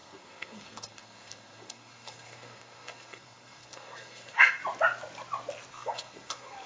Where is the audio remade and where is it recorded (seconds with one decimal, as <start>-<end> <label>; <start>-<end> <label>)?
0.0-4.6 remade; 4.6-5.7 recorded; 5.7-6.7 remade